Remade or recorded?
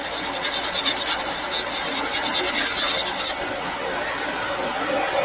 recorded